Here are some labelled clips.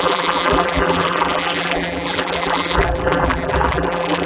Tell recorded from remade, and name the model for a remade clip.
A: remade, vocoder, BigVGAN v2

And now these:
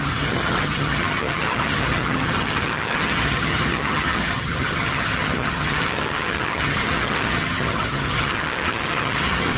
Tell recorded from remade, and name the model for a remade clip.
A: remade, vocoder, HiFi-GAN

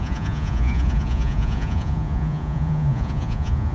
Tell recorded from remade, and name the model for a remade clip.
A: remade, vocoder, Vocos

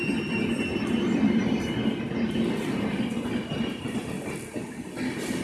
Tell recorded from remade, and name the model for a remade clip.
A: recorded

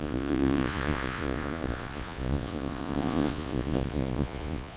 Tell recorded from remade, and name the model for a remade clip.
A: remade, vocoder, Vocos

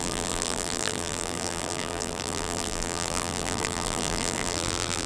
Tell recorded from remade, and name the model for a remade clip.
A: remade, vocoder, BigVGAN v2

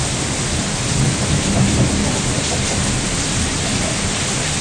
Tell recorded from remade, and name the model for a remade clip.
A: recorded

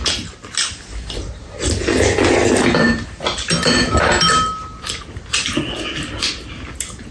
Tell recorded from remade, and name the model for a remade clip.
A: recorded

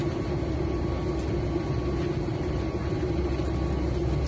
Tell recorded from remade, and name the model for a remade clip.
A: recorded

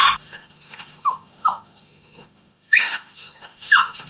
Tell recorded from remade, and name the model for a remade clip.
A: remade, autoencoder, DAC-VAE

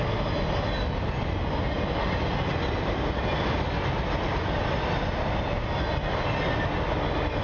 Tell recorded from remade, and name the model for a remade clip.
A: recorded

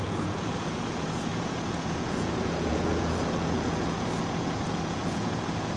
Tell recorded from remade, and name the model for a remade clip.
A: remade, vocoder, Vocos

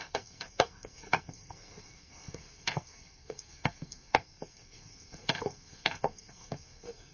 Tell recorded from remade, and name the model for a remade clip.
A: remade, codec, SNAC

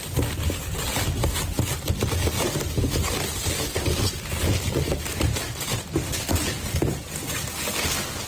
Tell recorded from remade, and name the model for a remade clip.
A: recorded